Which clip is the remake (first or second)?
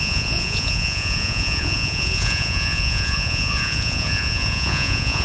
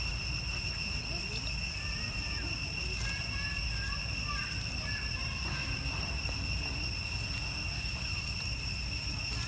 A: first